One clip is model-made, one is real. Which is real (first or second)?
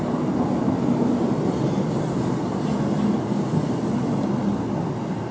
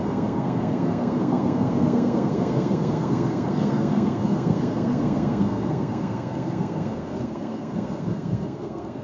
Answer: first